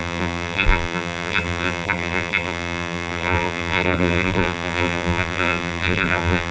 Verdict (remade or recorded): remade